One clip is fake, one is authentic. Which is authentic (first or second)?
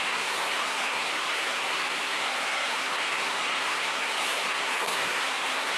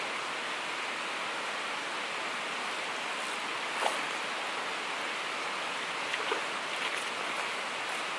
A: second